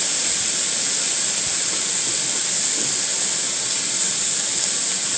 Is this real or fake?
real